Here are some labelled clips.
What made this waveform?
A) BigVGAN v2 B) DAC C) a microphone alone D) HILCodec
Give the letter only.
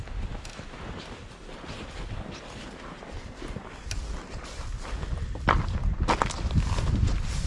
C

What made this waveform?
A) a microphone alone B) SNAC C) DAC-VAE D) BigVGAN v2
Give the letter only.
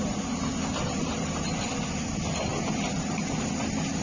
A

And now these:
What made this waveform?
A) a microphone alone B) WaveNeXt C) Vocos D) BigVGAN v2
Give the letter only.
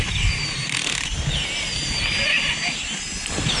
A